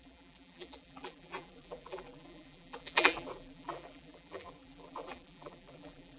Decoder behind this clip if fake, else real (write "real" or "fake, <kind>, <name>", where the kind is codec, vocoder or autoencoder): fake, vocoder, BigVGAN v2